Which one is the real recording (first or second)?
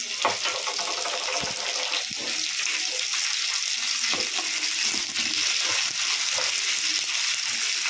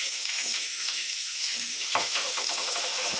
first